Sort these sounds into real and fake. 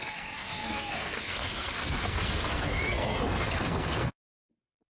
fake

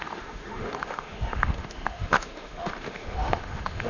fake